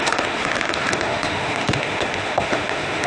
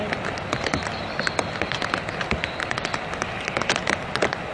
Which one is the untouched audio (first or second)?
second